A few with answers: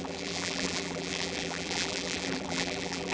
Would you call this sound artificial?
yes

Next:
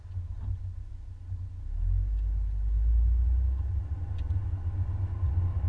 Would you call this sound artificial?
no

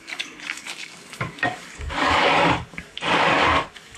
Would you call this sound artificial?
yes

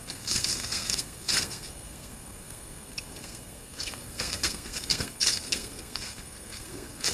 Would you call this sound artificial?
yes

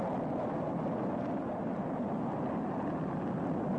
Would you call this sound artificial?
no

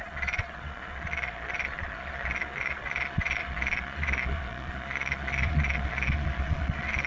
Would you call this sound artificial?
yes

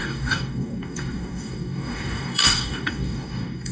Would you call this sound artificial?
yes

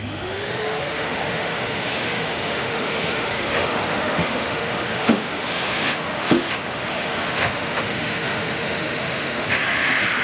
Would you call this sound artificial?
yes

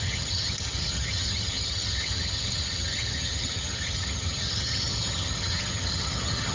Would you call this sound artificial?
yes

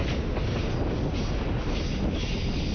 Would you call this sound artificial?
no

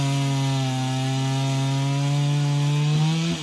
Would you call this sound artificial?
no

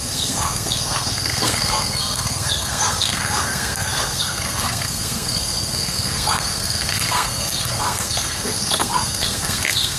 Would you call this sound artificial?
yes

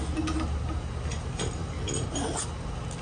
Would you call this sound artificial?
no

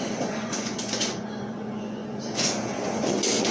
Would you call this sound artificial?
yes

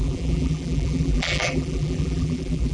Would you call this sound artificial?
yes